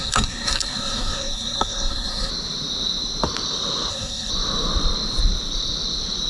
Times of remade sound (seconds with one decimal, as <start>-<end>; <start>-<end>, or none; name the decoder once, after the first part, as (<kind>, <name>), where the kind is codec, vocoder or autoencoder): 0.0-2.3 (codec, SNAC); 3.9-4.3